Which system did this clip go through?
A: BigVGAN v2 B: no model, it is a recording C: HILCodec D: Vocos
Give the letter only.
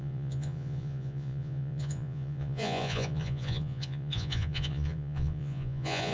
D